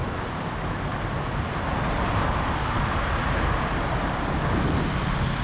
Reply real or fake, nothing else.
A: real